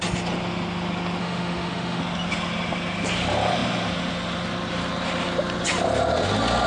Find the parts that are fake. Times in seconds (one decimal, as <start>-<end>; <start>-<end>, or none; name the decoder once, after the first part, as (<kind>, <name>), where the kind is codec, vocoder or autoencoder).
1.2-2.0 (autoencoder, DAC-VAE)

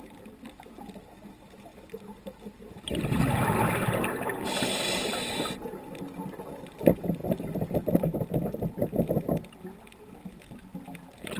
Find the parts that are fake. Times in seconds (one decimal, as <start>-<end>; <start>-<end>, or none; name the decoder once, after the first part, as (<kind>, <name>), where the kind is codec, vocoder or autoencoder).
none

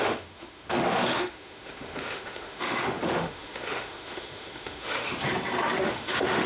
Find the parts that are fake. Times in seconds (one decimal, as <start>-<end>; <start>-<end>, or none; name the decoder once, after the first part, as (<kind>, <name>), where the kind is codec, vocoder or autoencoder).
0.0-5.2 (autoencoder, DAC-VAE); 5.8-6.5